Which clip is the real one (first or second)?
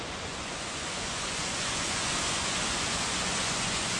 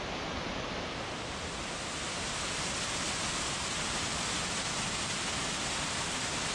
second